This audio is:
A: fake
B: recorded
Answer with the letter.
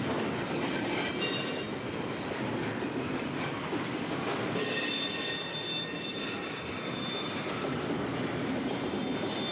B